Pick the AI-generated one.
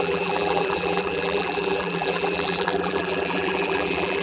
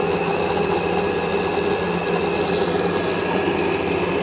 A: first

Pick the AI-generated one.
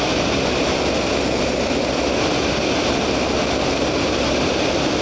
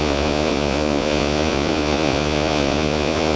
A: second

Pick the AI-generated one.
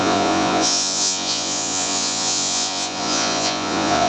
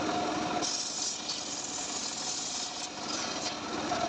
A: first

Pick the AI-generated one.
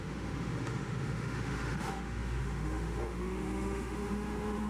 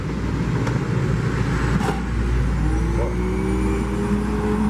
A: first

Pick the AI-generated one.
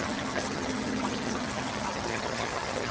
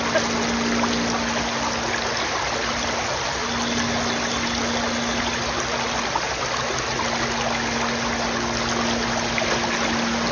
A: first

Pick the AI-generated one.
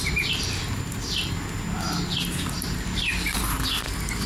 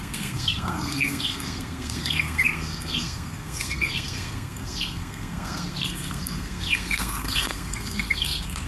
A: second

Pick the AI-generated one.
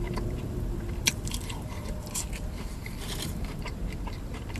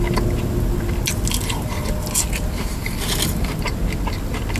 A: first